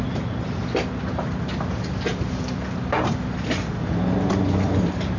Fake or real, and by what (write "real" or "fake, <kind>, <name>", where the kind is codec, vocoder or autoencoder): real